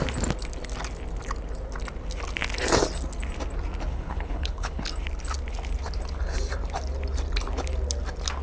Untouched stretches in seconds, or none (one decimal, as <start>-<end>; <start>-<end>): 0.0-3.9; 4.8-8.4